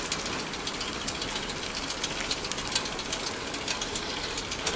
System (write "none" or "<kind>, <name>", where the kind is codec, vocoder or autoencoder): none